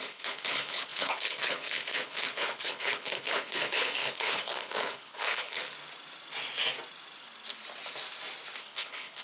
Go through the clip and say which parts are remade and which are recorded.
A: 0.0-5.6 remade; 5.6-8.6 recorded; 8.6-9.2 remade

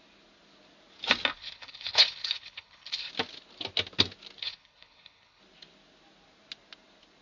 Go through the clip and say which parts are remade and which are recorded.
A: 0.0-1.3 recorded; 1.3-3.1 remade; 3.1-4.4 recorded; 4.4-5.4 remade; 5.4-7.2 recorded

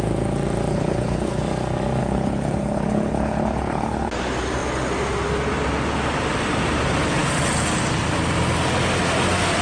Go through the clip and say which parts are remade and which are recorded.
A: 0.0-0.7 recorded; 0.7-1.4 remade; 1.4-2.0 recorded; 2.0-4.1 remade; 4.1-9.6 recorded

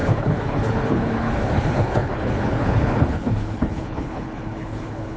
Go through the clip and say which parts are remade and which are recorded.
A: 0.0-5.2 remade

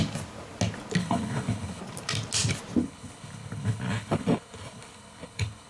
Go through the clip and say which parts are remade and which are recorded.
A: 0.0-1.0 recorded; 1.0-1.8 remade; 1.8-2.8 recorded; 2.8-5.7 remade